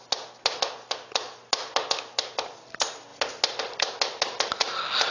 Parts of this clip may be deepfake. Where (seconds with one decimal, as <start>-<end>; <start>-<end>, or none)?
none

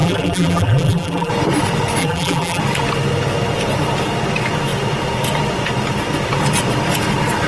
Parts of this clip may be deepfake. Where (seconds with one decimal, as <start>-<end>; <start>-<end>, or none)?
0.0-1.3; 2.0-2.6

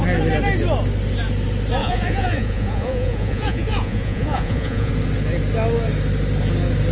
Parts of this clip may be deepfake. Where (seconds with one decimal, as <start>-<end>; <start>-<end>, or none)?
1.8-4.9